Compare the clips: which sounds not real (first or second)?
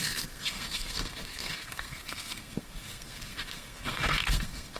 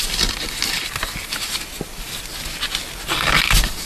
first